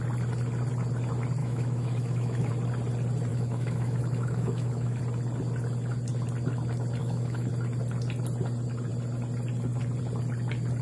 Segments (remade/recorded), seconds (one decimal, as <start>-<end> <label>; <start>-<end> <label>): 0.0-1.4 recorded; 1.4-2.5 remade; 2.5-3.3 recorded; 3.3-5.0 remade; 5.0-7.0 recorded; 7.0-7.5 remade; 7.5-10.8 recorded